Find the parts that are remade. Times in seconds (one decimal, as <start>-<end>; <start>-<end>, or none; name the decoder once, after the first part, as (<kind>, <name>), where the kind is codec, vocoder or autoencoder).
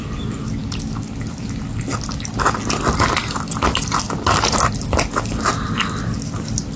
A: none